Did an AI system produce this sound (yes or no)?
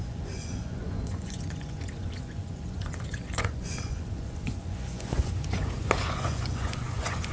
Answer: yes